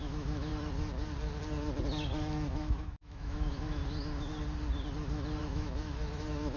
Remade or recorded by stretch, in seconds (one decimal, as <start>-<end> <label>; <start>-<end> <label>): 0.0-0.5 remade; 0.5-2.5 recorded; 2.5-3.8 remade; 3.8-5.4 recorded; 5.4-6.6 remade